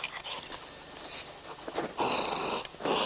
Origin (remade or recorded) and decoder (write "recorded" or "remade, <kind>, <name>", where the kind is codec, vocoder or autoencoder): recorded